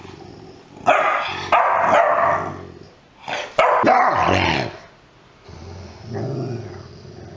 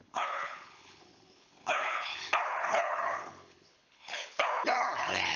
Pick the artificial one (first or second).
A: second